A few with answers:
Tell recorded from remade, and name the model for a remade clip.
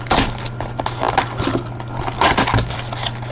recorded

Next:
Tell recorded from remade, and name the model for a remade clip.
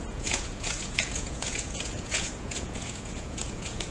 remade, vocoder, Vocos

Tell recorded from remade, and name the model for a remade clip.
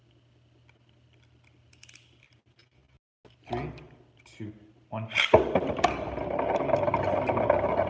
recorded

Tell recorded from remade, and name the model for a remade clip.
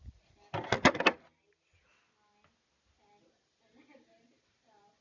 recorded